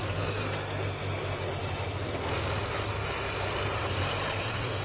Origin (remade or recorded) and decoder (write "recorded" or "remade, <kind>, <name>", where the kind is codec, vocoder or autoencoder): recorded